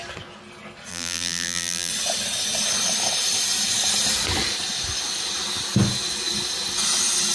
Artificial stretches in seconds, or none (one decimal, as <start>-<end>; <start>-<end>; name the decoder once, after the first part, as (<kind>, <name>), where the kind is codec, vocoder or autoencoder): 0.9-1.9 (vocoder, BigVGAN v2)